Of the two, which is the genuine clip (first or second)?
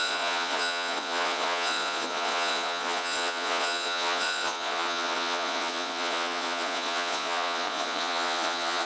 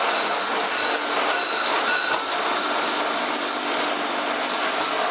second